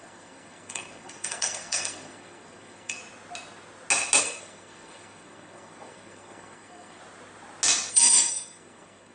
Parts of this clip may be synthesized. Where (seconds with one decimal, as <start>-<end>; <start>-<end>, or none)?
0.0-3.0; 4.2-7.0; 7.9-9.1